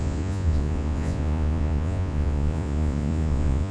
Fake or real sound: fake